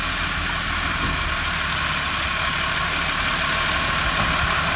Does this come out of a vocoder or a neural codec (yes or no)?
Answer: no